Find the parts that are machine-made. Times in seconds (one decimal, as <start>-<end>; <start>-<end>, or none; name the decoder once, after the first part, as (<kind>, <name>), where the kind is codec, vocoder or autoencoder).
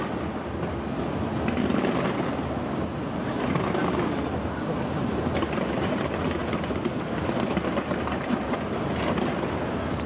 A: none